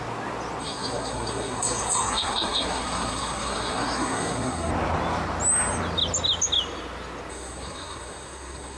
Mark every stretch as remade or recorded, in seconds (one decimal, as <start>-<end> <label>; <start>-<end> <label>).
0.0-0.6 recorded; 0.6-4.7 remade; 4.7-7.3 recorded; 7.3-8.8 remade